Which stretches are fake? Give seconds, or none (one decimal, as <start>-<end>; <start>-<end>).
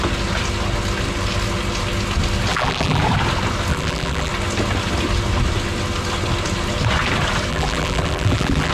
2.5-3.0; 3.7-4.3; 7.5-8.7